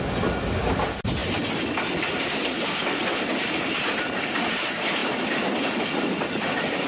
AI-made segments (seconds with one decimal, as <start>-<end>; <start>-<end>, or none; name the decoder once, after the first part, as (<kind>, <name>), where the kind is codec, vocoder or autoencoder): none